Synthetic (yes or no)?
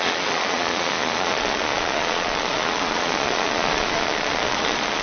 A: yes